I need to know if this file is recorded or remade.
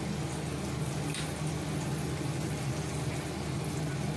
recorded